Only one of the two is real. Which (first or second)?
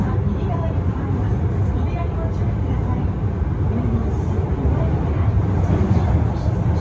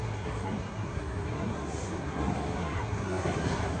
first